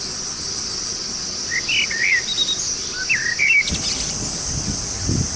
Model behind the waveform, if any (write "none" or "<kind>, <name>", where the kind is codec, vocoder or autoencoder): none